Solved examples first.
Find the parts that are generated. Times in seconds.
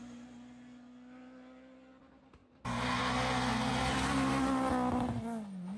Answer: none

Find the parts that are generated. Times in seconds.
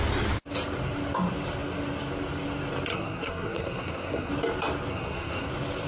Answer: 2.9-4.3 (codec, SNAC); 4.9-5.5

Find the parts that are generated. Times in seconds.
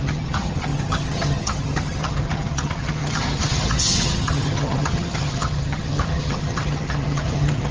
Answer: 0.0-7.7 (vocoder, HiFi-GAN)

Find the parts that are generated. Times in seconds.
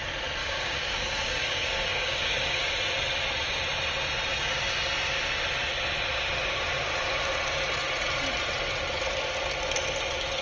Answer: 0.4-2.7 (codec, DAC)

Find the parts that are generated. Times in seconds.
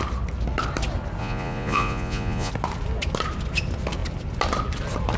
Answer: 1.2-2.5 (vocoder, Vocos)